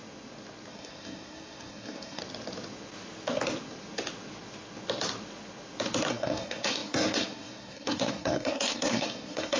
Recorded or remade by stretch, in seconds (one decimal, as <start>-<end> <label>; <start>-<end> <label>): 0.0-0.7 recorded; 0.7-2.2 remade; 2.2-6.1 recorded; 6.1-9.6 remade